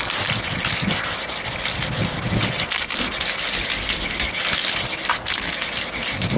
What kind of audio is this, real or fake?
real